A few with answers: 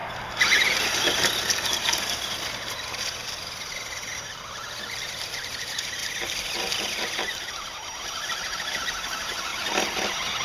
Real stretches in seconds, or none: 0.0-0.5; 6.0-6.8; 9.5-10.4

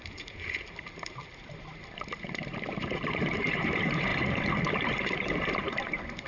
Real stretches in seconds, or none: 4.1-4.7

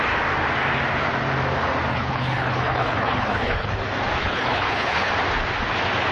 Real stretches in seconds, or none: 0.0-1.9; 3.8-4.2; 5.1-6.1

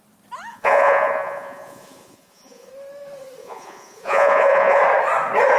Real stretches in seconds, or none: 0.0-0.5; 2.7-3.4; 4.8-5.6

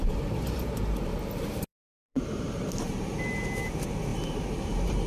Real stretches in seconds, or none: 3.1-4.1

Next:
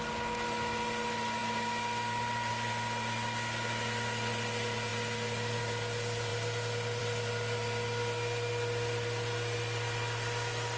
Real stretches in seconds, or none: 0.0-10.8

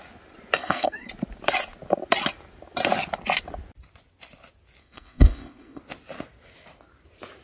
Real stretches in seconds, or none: 0.0-0.6; 1.1-4.8; 5.8-7.4

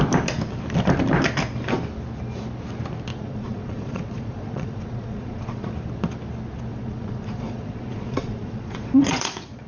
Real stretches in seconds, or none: 0.0-3.1; 5.7-6.7